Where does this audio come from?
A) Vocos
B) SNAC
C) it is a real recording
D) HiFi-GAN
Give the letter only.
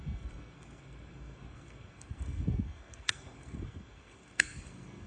B